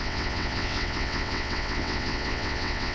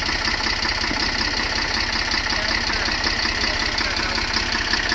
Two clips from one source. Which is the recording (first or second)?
second